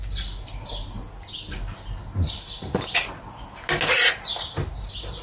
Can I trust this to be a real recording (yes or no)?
yes